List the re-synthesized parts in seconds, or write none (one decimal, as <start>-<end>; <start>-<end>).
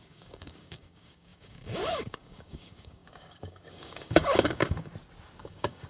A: 0.0-4.9; 5.4-5.9